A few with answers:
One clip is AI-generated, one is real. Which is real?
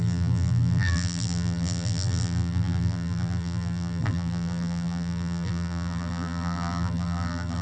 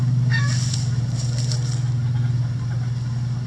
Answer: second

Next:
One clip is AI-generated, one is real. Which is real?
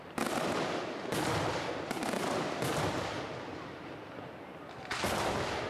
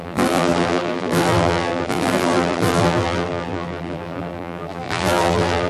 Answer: first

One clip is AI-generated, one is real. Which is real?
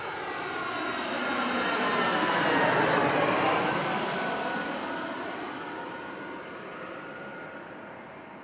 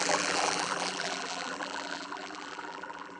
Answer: first